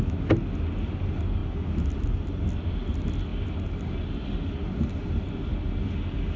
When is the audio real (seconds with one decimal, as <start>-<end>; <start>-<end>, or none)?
0.0-6.4